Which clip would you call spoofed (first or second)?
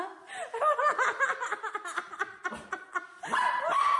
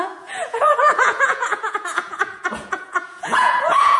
second